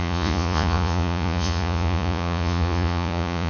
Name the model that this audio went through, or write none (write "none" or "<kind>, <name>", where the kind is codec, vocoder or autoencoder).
vocoder, Vocos